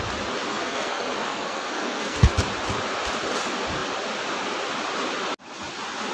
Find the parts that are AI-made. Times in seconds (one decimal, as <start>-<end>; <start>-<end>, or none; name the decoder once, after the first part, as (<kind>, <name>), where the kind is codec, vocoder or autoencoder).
0.5-2.4 (codec, SNAC)